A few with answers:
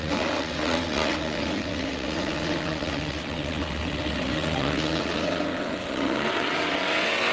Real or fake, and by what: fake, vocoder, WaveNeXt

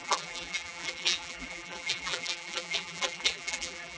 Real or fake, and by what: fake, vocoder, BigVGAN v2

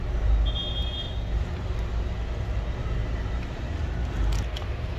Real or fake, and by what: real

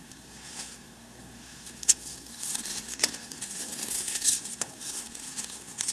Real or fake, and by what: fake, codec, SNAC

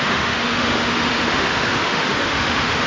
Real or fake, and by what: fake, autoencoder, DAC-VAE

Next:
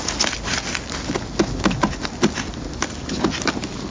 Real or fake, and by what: real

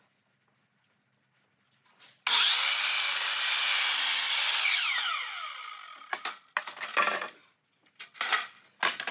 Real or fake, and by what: real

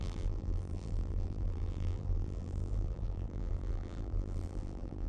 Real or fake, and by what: fake, vocoder, BigVGAN v2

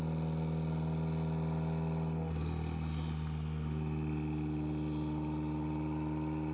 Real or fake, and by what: real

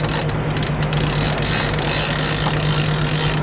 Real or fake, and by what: real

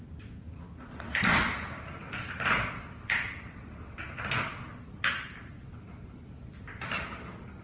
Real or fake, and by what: real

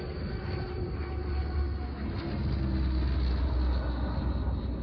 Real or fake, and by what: real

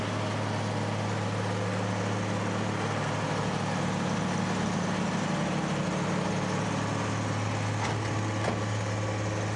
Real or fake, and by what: real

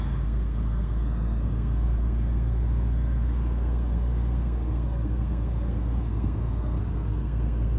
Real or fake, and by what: fake, codec, SNAC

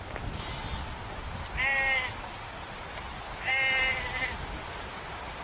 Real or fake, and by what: real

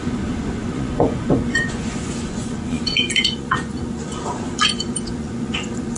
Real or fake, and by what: fake, vocoder, Vocos